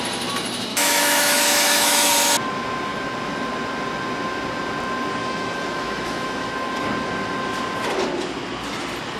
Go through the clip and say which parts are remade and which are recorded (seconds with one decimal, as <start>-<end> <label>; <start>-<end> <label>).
0.0-0.7 recorded; 0.7-2.1 remade; 2.1-5.2 recorded; 5.2-6.5 remade; 6.5-9.2 recorded